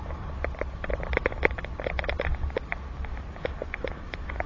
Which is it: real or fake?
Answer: real